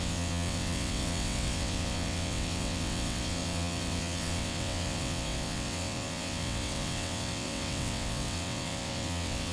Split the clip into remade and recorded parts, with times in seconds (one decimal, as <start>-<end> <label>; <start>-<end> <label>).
0.0-9.5 remade